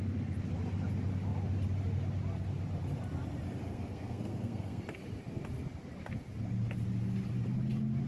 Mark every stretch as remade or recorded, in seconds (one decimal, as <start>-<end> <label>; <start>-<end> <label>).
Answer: 0.0-3.7 recorded; 3.7-4.8 remade; 4.8-8.1 recorded